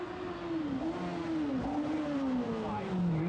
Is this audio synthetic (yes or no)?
no